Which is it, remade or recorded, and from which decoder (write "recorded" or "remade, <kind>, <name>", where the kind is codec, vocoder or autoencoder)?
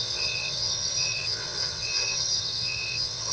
remade, vocoder, WaveNeXt